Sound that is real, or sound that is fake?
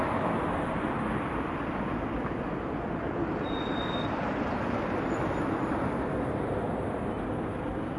real